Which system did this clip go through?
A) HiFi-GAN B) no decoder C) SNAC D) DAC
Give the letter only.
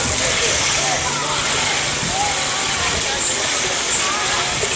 B